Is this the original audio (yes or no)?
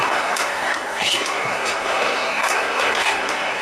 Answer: no